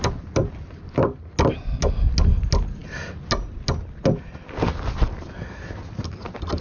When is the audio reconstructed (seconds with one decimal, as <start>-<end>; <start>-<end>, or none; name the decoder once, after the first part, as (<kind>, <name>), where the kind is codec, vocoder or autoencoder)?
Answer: none